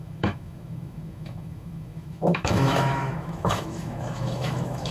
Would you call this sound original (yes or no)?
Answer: no